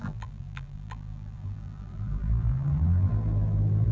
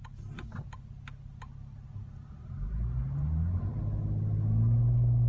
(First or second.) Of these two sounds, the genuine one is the second